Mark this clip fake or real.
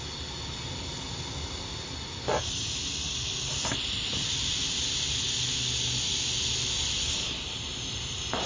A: real